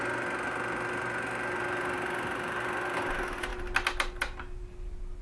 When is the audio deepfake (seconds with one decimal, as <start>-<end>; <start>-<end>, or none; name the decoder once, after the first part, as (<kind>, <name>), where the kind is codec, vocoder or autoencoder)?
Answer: none